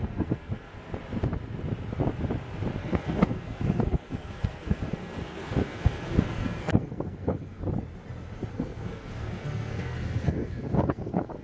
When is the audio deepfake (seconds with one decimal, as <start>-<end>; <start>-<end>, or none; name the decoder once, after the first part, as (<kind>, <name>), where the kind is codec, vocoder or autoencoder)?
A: 0.0-0.7 (codec, SNAC); 2.8-7.6; 8.5-11.4

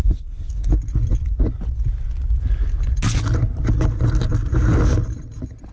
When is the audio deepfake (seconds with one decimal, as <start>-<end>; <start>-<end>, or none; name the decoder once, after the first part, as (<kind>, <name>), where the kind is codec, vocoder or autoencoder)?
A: 0.0-0.7 (codec, SNAC)